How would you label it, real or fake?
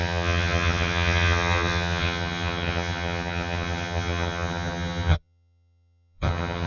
fake